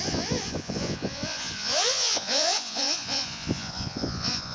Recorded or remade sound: remade